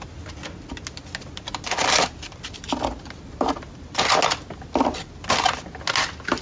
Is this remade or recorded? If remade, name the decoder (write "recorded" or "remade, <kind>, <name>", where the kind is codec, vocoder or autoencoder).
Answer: recorded